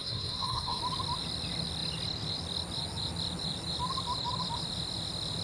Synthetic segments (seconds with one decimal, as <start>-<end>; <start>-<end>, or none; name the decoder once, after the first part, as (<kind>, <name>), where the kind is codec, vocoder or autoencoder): 0.0-0.8 (codec, SNAC)